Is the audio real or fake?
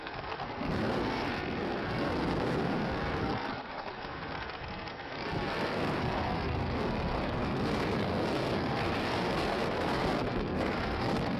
fake